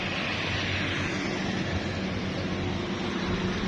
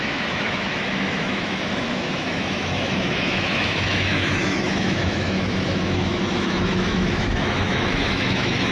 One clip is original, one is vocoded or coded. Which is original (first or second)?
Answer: first